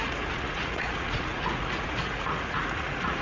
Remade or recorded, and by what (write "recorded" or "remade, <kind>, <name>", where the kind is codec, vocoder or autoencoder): remade, vocoder, Vocos